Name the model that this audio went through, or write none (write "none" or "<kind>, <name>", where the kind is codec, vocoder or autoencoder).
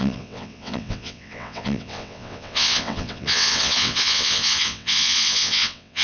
vocoder, WaveNeXt